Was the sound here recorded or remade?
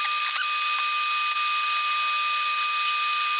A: recorded